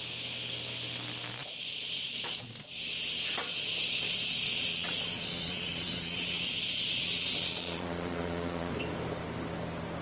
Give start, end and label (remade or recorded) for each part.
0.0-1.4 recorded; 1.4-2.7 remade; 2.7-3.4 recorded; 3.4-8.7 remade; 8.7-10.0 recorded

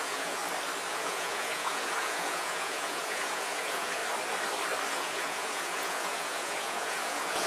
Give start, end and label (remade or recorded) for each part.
0.0-0.4 remade; 0.4-0.9 recorded; 0.9-4.0 remade; 4.0-4.9 recorded; 4.9-7.5 remade

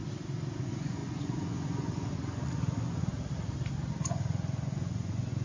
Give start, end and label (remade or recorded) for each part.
0.0-0.6 recorded; 0.6-3.1 remade; 3.1-4.0 recorded; 4.0-5.4 remade